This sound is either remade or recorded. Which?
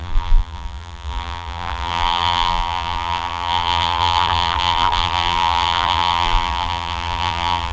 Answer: remade